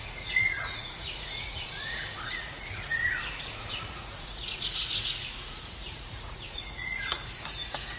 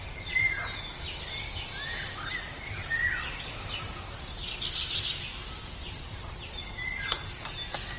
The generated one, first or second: first